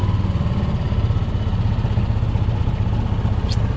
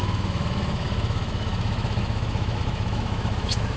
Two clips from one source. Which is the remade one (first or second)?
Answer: second